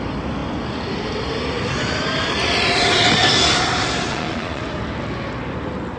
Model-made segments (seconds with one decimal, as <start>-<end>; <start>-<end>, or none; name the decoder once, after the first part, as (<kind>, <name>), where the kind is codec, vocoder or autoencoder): 4.1-4.6 (vocoder, Vocos)